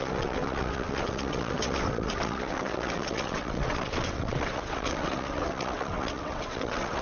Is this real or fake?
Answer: fake